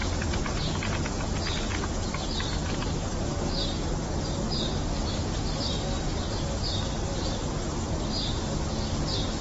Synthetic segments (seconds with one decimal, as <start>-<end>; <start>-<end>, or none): 0.0-2.1